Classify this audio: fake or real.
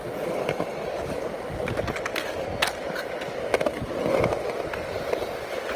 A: real